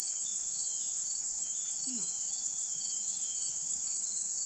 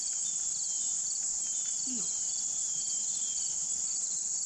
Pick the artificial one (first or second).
first